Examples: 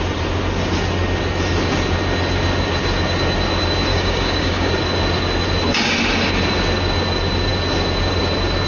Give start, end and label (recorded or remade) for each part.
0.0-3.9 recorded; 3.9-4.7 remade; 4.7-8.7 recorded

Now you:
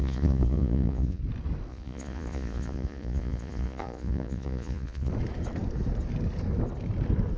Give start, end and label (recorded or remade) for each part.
0.0-1.2 remade; 1.2-1.7 recorded; 1.7-5.1 remade; 5.1-7.4 recorded

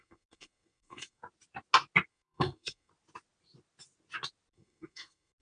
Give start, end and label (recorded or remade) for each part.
0.0-1.2 remade; 1.2-2.1 recorded; 2.1-2.9 remade; 2.9-4.5 recorded; 4.5-5.4 remade